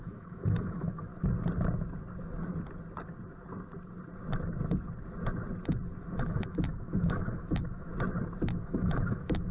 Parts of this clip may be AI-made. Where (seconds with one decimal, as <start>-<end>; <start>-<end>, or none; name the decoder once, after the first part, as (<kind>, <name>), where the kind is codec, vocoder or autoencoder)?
0.0-1.1 (autoencoder, DAC-VAE); 6.1-7.9; 8.5-9.5